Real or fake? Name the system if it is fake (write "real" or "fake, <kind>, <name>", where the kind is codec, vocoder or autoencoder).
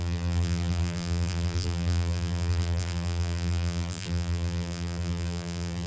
fake, vocoder, BigVGAN v2